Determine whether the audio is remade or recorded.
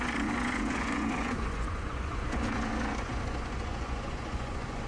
remade